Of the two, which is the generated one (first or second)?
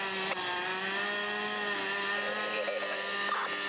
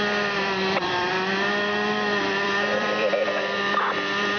second